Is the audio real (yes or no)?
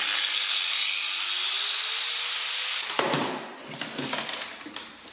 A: yes